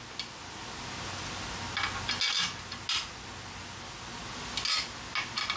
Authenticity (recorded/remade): recorded